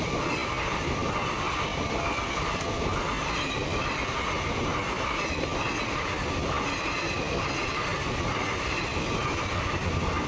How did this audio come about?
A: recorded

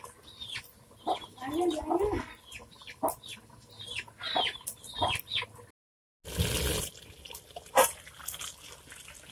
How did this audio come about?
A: recorded